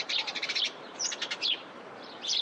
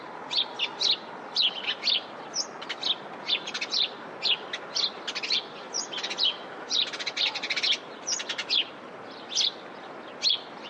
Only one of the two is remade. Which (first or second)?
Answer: first